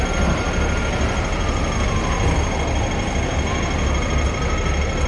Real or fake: real